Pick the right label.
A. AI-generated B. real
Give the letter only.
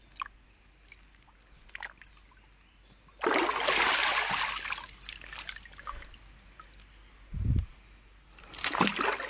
B